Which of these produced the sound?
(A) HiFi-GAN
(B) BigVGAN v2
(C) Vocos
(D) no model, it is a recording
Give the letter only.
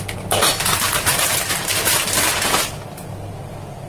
D